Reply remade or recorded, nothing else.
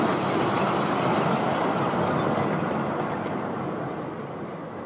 recorded